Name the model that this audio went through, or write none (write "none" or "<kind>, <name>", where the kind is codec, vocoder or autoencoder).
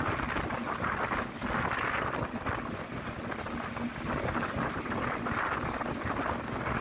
none